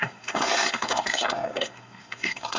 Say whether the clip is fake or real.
fake